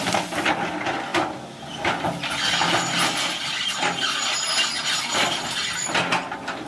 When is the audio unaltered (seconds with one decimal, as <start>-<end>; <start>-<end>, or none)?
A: 0.0-6.7